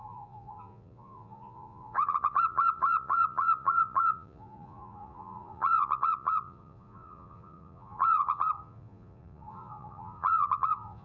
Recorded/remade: remade